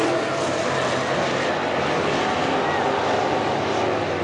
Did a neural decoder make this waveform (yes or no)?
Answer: no